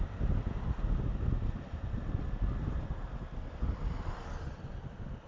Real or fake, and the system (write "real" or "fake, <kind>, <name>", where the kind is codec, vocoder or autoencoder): real